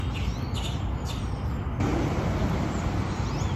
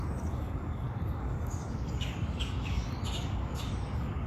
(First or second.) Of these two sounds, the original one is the first